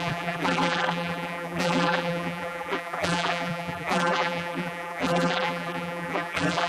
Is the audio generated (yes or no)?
yes